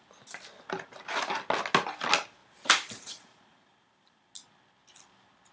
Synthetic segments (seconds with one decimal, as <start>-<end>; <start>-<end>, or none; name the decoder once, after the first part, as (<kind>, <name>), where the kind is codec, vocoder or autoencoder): 2.4-4.2 (vocoder, BigVGAN v2)